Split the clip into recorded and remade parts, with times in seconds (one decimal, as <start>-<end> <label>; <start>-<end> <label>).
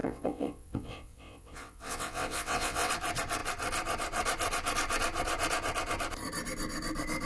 0.0-2.9 remade; 2.9-7.3 recorded